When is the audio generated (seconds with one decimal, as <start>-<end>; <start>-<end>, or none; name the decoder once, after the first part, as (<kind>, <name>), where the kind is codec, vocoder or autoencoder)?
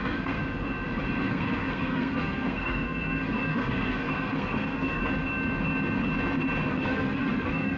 0.0-0.4 (codec, SNAC); 1.3-5.0; 6.7-7.8